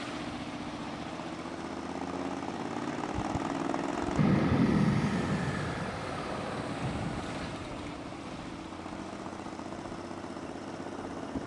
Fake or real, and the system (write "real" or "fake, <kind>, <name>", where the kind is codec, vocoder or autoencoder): real